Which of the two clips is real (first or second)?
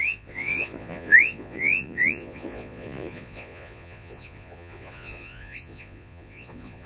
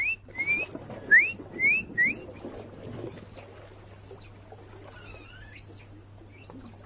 second